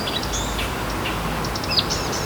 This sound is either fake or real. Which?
real